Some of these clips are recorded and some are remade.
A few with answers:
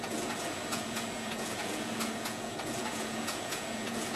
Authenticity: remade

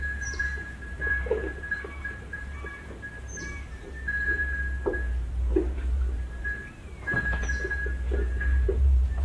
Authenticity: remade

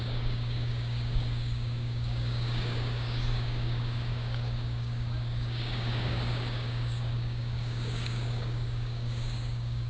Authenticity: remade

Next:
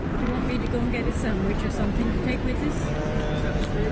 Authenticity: recorded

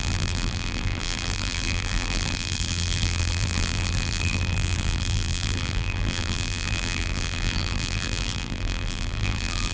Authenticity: remade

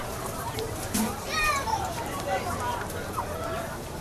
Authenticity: remade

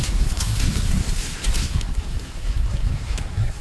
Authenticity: remade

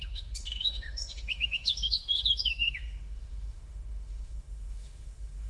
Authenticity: remade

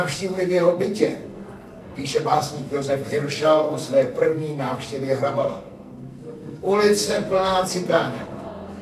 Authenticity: remade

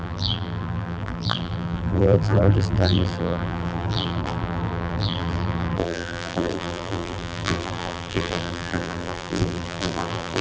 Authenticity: remade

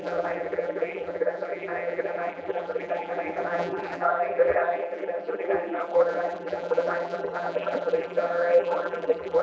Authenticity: remade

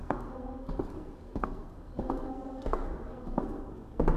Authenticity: remade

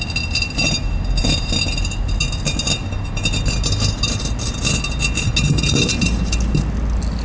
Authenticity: recorded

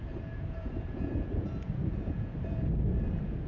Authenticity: remade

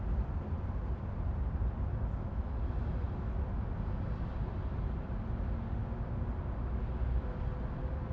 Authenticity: recorded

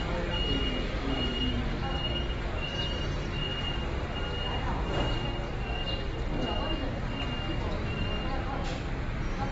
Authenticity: recorded